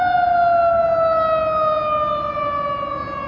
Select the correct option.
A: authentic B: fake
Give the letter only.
A